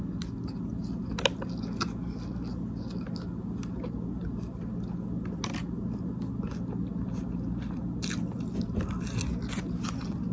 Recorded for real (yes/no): yes